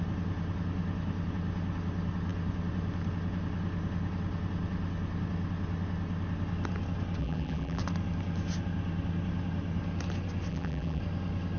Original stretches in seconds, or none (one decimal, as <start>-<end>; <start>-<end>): 0.0-7.2; 7.8-10.5; 11.0-11.6